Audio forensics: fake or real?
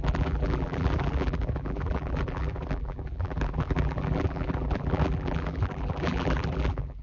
fake